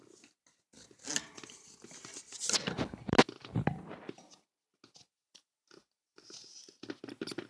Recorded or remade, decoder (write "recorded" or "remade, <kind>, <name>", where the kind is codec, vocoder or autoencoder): recorded